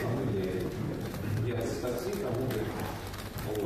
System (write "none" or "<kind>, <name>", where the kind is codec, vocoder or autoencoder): none